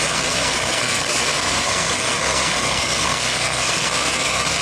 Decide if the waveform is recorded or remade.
remade